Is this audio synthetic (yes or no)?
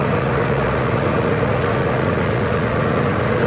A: yes